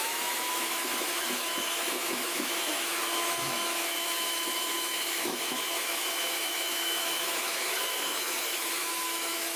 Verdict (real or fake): fake